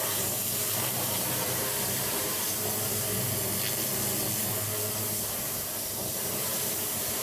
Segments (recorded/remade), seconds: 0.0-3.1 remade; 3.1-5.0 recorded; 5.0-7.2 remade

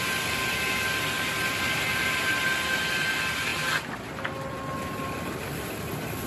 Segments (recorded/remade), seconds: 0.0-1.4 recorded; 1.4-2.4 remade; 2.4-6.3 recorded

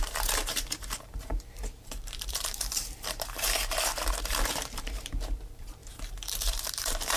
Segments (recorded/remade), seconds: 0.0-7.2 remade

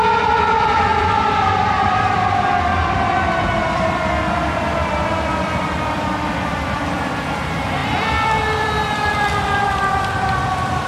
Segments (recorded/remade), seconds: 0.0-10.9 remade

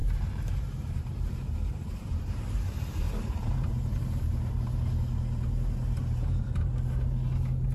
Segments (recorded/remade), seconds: 0.0-4.3 remade; 4.3-6.0 recorded; 6.0-6.7 remade; 6.7-7.7 recorded

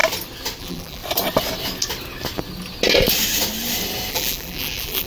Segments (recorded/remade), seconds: 0.0-0.6 recorded; 0.6-1.0 remade; 1.0-4.1 recorded; 4.1-5.1 remade

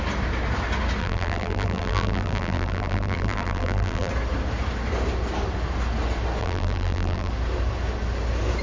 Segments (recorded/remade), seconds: 0.0-1.0 recorded; 1.0-4.1 remade; 4.1-6.4 recorded; 6.4-7.3 remade; 7.3-8.6 recorded

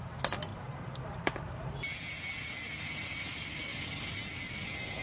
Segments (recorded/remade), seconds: 0.0-0.5 recorded; 0.5-1.8 remade; 1.8-5.0 recorded